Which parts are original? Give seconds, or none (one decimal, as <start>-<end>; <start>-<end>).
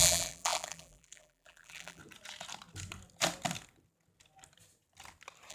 2.0-5.5